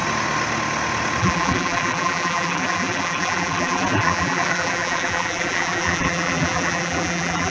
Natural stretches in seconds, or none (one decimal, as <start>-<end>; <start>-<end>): 0.0-1.2